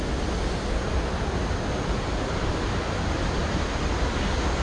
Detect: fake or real real